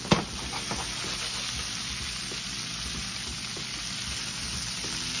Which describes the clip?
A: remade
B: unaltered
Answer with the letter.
B